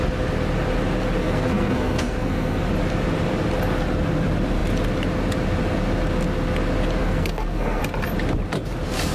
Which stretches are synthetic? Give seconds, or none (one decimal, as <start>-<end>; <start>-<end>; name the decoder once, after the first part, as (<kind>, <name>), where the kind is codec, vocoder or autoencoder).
1.2-2.7 (codec, SNAC); 7.0-7.8